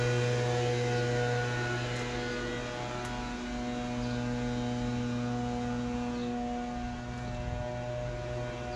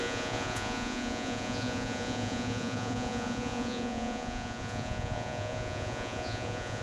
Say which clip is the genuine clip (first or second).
first